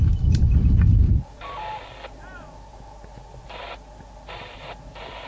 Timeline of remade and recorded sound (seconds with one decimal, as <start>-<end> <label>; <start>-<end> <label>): 0.0-5.3 recorded